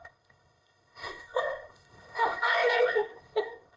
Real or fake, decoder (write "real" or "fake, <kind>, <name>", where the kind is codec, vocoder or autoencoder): fake, codec, ZipCodec